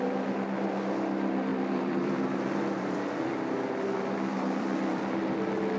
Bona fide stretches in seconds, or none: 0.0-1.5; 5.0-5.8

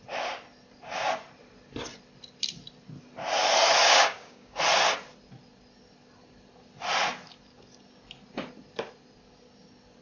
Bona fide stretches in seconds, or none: 0.0-3.8; 4.6-10.0

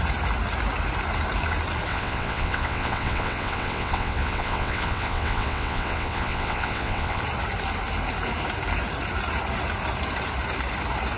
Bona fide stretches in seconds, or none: 0.0-1.9; 7.2-11.2

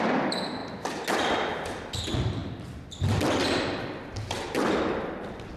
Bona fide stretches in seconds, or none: 0.6-2.0; 2.4-3.7

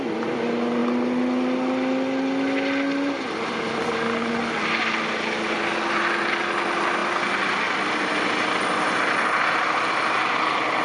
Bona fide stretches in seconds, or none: 0.0-10.8

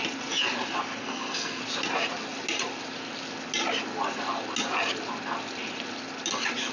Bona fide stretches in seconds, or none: 0.0-1.0; 1.6-6.7

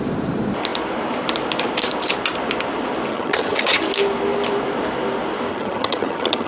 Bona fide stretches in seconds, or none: 0.0-3.1; 3.8-5.5

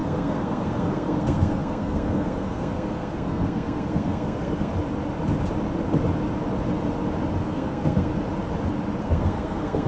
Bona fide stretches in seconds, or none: 4.7-7.5; 8.1-9.0